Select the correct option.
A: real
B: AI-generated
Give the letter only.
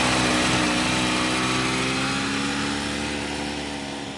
A